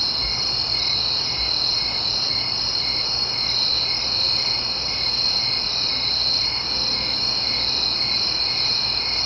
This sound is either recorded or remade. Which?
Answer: recorded